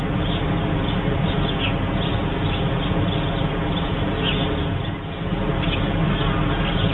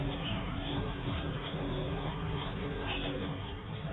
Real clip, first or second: first